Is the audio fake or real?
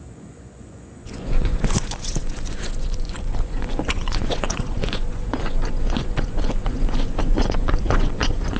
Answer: fake